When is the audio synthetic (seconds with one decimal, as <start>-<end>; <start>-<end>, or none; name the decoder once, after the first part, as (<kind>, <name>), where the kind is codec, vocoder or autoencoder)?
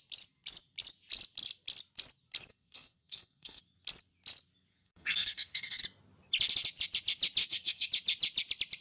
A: 2.5-3.6 (codec, SNAC); 4.7-5.8; 7.4-7.9